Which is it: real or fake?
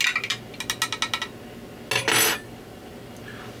real